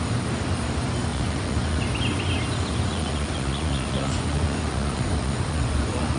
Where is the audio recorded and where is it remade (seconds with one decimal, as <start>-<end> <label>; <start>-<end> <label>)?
0.0-1.1 recorded; 1.1-1.8 remade; 1.8-2.9 recorded; 2.9-6.2 remade